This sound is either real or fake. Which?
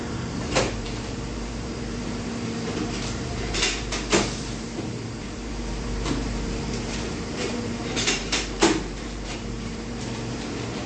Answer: fake